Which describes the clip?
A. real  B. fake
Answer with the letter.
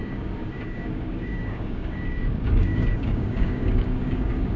B